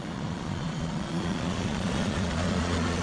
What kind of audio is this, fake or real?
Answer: fake